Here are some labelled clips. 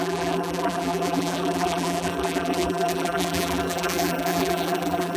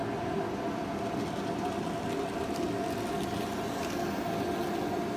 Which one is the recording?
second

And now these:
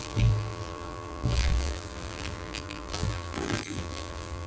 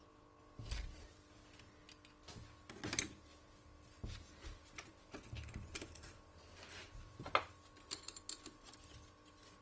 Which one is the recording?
second